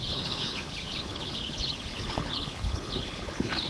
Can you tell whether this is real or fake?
fake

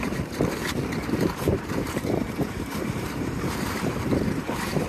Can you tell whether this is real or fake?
fake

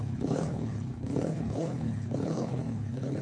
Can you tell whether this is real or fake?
fake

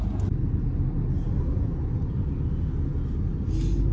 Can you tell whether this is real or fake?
real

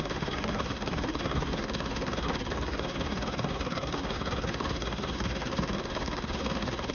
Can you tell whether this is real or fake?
fake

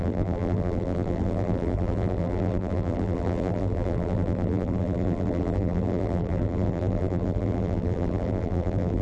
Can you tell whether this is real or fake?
fake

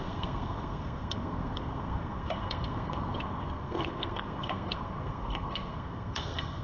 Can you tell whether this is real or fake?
fake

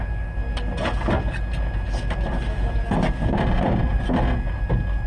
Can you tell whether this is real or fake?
real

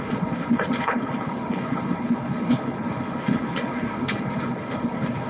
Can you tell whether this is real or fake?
fake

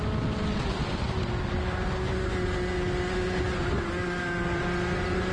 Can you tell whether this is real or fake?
real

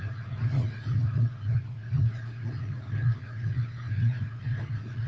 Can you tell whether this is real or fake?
fake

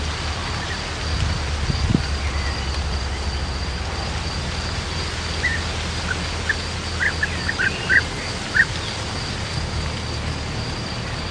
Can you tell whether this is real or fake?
real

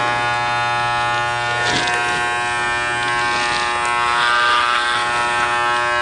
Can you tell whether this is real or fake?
real